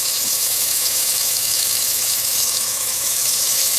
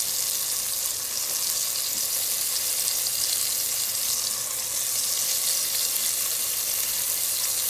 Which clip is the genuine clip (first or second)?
second